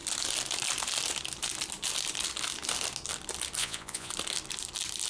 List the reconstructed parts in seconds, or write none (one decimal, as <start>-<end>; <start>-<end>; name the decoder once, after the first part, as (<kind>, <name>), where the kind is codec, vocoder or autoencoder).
3.6-4.1 (vocoder, Vocos)